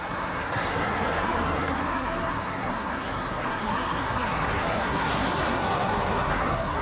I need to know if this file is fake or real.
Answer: fake